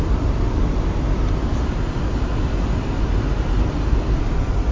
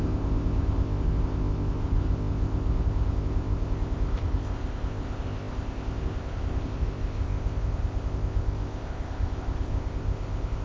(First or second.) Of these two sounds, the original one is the first